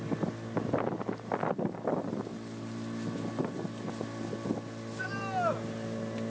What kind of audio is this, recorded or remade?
recorded